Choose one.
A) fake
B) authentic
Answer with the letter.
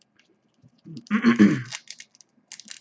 B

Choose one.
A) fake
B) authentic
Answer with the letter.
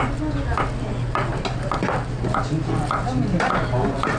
B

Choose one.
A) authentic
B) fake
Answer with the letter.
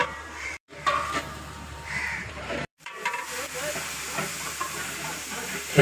B